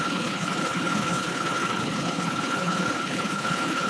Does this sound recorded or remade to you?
remade